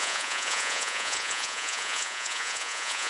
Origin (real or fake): fake